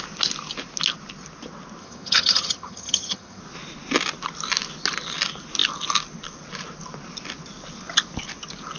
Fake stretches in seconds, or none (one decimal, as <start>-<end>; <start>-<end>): 1.8-3.4